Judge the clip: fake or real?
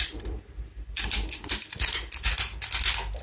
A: real